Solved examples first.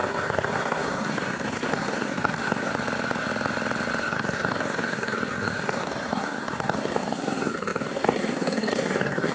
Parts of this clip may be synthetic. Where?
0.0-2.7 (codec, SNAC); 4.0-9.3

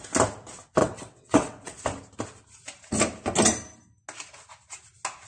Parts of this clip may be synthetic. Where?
0.8-1.8 (vocoder, WaveNeXt)

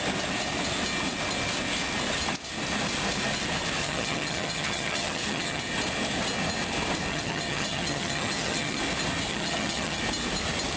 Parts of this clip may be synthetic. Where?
3.8-5.6 (vocoder, HiFi-GAN); 7.1-8.8; 9.3-10.0

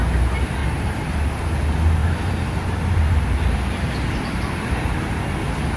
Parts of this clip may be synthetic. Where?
0.6-1.4 (vocoder, BigVGAN v2); 2.0-5.1

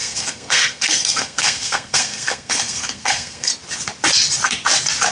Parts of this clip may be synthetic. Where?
0.0-3.5 (codec, SNAC)

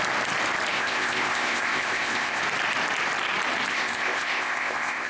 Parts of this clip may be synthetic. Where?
0.7-2.4 (codec, ZipCodec); 3.7-5.1

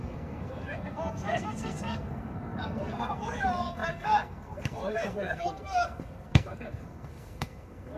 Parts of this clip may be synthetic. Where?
0.0-8.0 (codec, SNAC)